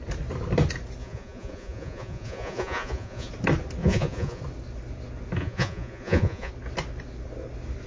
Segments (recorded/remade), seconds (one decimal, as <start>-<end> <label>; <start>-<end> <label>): 0.0-1.0 recorded; 1.0-3.3 remade; 3.3-3.8 recorded; 3.8-4.4 remade; 4.4-5.4 recorded; 5.4-6.5 remade; 6.5-7.9 recorded